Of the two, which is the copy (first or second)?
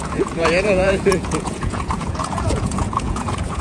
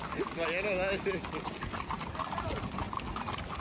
first